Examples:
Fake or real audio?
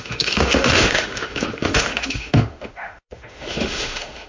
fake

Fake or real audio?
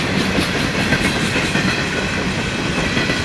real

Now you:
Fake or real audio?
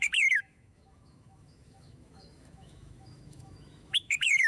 fake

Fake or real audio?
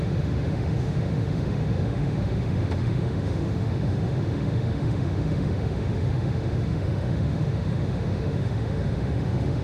fake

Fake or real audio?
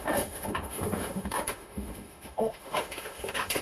fake